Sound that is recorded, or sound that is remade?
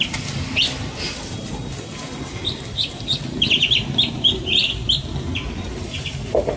recorded